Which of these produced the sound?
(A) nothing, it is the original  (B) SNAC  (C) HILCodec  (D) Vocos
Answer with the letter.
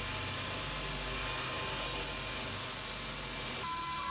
A